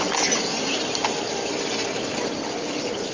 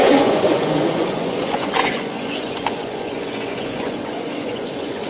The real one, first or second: first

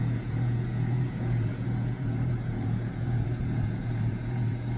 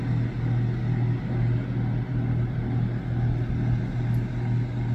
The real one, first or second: second